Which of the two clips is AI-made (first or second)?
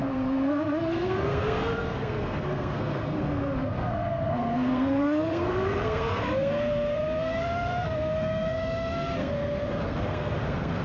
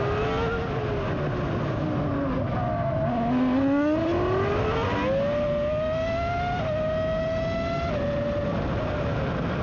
first